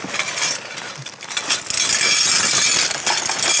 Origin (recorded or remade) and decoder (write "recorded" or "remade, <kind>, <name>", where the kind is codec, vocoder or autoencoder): recorded